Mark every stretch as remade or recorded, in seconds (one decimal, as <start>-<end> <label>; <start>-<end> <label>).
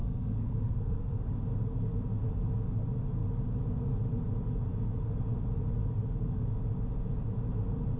0.0-1.3 remade; 1.3-8.0 recorded